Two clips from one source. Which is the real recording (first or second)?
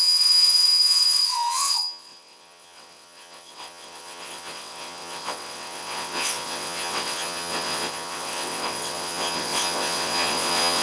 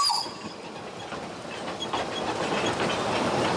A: second